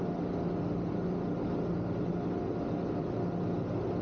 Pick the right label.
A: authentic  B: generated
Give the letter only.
A